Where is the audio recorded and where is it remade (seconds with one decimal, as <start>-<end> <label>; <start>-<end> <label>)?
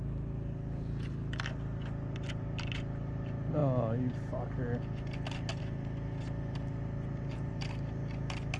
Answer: 0.0-8.6 recorded